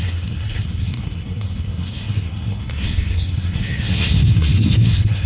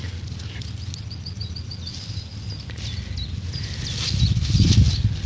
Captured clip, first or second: second